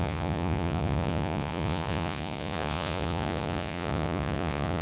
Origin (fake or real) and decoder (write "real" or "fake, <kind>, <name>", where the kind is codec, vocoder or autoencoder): fake, vocoder, Vocos